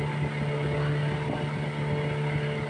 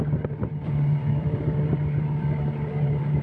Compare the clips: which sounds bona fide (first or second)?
first